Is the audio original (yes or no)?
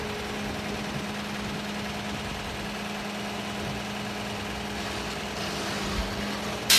yes